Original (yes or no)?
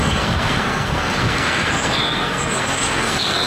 no